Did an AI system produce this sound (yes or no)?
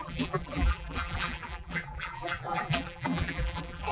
yes